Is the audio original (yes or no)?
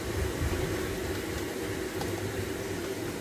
yes